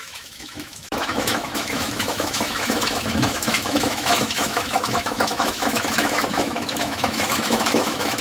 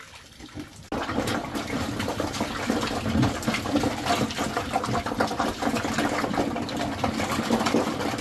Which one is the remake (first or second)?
first